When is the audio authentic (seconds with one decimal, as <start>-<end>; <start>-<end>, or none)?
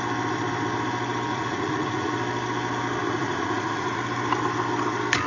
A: 0.0-1.3; 2.1-3.0; 4.0-5.3